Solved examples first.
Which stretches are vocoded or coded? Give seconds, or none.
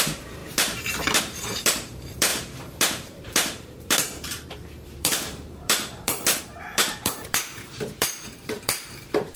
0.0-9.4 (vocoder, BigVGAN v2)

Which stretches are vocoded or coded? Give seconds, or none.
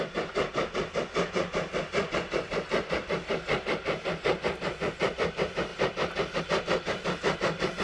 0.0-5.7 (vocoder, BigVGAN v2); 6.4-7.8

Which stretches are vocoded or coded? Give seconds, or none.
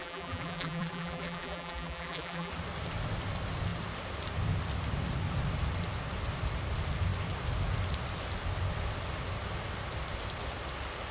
0.0-2.5 (vocoder, BigVGAN v2)